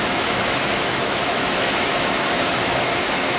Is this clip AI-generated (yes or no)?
yes